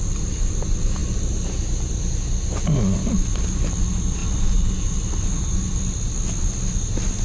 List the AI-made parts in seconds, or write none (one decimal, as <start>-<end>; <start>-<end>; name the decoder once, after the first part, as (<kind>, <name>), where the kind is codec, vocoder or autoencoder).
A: none